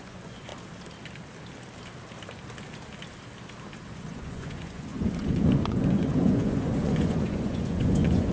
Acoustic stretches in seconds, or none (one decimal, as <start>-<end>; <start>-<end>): 0.5-3.9